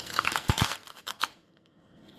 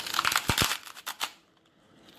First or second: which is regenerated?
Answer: first